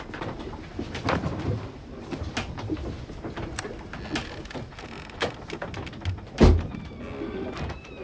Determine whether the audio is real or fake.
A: real